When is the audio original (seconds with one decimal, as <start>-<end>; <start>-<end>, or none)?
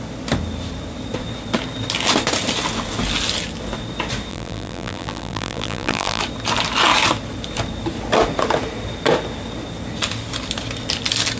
0.0-4.3; 6.2-11.4